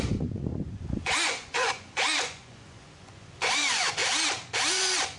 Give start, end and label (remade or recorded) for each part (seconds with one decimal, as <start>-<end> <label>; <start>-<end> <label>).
0.0-4.0 remade; 4.0-4.7 recorded; 4.7-5.2 remade